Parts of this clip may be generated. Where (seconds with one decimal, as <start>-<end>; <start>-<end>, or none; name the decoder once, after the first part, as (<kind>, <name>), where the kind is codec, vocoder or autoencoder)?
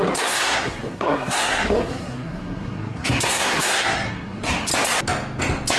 0.0-4.7 (codec, SNAC)